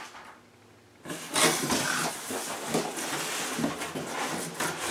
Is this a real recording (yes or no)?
yes